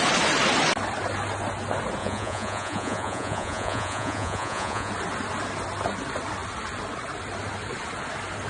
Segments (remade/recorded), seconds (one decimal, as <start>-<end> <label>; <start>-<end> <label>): 0.0-2.0 recorded; 2.0-4.9 remade; 4.9-8.5 recorded